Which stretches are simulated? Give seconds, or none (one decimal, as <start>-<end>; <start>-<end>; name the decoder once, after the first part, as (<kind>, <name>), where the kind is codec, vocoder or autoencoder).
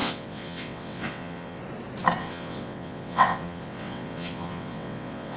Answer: 0.0-1.6 (vocoder, WaveNeXt); 2.2-5.4